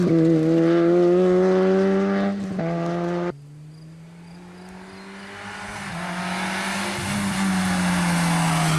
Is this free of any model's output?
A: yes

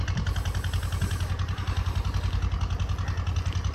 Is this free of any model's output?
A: yes